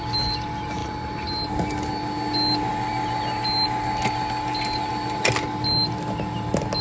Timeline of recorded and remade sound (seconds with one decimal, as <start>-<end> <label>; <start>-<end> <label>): 0.0-6.8 recorded